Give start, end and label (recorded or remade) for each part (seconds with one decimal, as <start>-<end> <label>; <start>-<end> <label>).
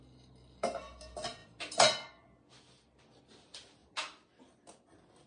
0.0-5.3 recorded